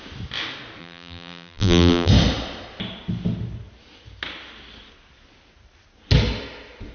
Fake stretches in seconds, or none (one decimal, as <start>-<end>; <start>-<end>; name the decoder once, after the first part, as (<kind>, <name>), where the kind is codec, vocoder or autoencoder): 0.8-2.1 (vocoder, BigVGAN v2)